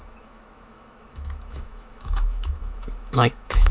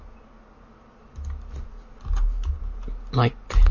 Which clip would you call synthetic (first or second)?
first